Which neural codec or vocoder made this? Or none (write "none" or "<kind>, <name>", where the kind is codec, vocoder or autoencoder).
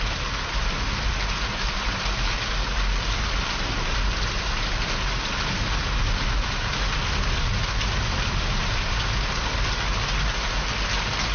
none